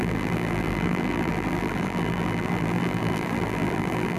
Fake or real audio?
fake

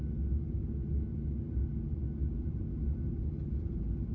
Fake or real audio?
real